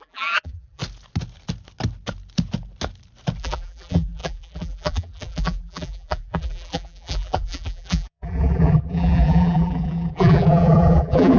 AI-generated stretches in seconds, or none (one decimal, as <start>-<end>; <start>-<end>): 0.0-0.8; 3.4-11.4